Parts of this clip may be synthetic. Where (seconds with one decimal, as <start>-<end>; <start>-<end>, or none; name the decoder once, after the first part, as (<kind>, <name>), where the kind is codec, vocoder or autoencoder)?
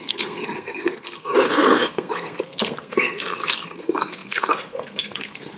0.0-5.6 (codec, SNAC)